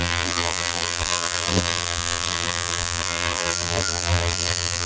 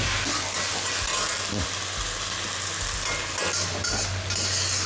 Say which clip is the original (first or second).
second